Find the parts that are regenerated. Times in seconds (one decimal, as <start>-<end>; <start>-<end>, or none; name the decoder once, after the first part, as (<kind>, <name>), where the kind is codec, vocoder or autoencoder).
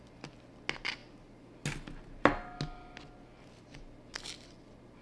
none